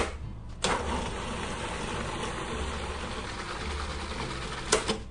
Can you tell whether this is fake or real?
real